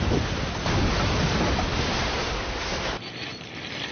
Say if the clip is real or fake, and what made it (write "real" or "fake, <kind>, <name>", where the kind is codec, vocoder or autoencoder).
real